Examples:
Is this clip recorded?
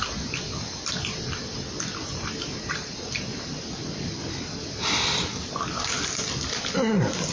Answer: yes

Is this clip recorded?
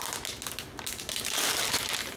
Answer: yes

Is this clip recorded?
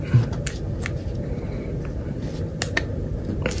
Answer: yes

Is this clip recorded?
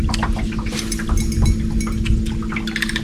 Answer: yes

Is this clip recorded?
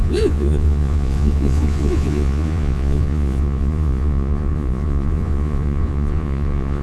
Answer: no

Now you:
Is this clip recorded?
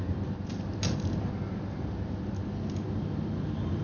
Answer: yes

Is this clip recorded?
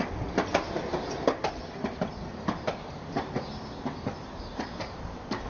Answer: yes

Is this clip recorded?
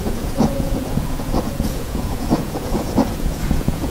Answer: no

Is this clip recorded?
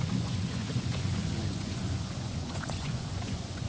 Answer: no